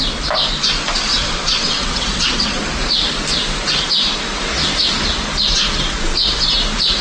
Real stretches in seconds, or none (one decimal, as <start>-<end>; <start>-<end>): 0.0-1.1; 2.6-7.0